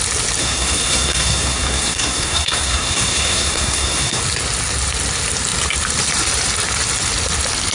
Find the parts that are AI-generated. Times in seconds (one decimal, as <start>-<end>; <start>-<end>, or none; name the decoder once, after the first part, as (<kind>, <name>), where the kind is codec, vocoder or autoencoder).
0.4-4.2 (codec, SNAC)